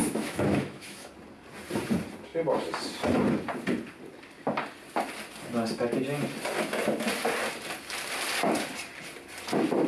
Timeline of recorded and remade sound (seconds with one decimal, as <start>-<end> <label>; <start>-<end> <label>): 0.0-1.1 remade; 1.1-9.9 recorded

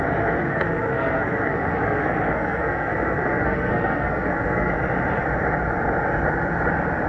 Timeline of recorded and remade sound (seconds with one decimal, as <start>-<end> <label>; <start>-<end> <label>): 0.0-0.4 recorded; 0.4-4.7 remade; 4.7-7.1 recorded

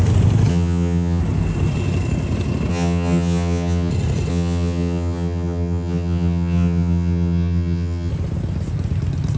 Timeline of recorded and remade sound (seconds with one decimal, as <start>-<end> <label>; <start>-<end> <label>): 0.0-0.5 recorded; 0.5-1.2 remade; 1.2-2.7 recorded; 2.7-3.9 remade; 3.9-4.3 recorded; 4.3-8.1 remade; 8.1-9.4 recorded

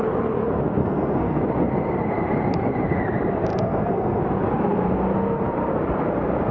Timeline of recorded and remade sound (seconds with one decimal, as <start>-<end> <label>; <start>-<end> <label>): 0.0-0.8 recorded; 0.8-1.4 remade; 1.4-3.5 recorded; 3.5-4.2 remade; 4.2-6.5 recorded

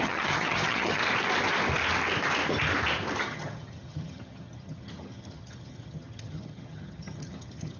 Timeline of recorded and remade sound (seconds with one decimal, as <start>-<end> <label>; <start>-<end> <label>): 0.0-1.0 remade; 1.0-3.2 recorded; 3.2-7.8 remade